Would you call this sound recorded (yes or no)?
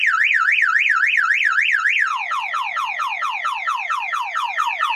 yes